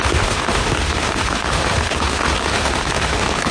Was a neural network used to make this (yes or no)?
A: yes